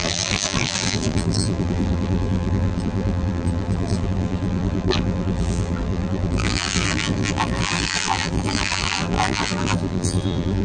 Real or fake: fake